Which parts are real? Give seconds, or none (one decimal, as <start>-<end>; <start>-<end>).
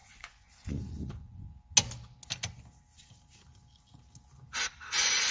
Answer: 1.5-5.3